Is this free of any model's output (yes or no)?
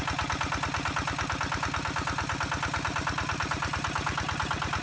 yes